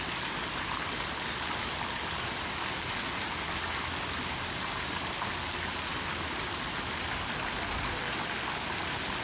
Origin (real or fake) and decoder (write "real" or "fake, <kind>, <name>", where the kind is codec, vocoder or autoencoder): real